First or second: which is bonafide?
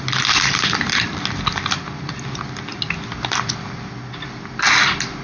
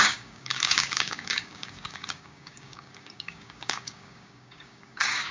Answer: first